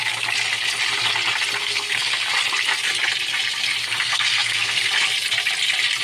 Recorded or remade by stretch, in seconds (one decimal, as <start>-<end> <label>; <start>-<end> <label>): 0.0-1.6 recorded; 1.6-2.3 remade; 2.3-3.8 recorded; 3.8-4.9 remade; 4.9-6.0 recorded